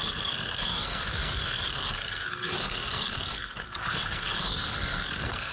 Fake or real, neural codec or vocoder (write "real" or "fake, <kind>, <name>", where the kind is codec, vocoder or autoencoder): fake, codec, SNAC